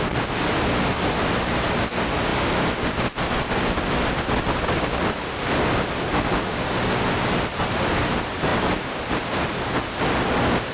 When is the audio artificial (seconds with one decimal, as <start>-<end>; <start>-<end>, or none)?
none